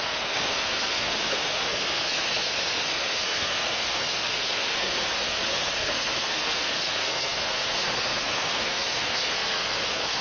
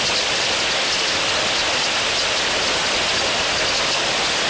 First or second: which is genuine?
second